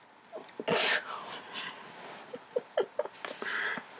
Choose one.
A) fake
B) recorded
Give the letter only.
B